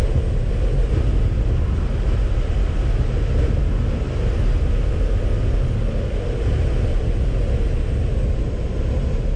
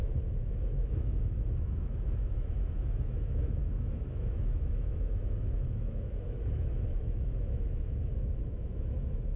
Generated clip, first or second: second